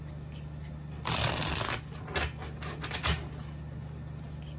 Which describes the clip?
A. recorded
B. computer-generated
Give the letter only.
A